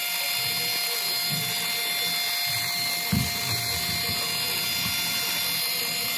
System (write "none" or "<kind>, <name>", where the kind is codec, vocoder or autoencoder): none